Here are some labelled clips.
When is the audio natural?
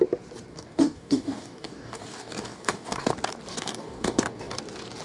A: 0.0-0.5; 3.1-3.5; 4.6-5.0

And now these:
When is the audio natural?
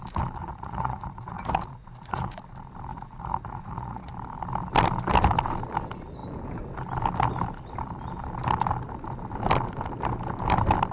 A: 0.0-0.4; 2.4-2.9; 4.1-10.9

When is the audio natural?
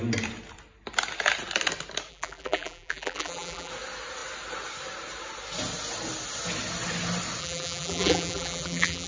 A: 0.0-2.1; 3.7-7.4